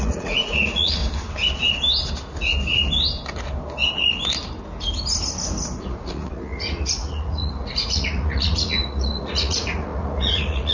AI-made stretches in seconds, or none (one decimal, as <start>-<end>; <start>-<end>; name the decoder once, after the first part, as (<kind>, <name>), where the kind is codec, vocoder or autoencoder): 0.0-1.0 (vocoder, Vocos); 5.8-10.7